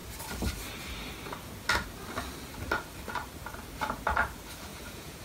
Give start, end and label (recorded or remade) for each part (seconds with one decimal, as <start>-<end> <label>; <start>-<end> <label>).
0.0-4.7 recorded; 4.7-5.2 remade